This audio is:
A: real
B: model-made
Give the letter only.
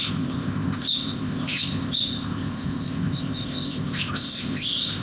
B